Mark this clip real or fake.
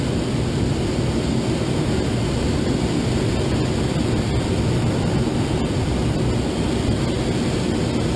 real